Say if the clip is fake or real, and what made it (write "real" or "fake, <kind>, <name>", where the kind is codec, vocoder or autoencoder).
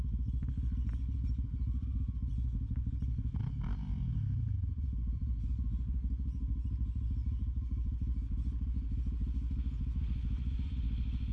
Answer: real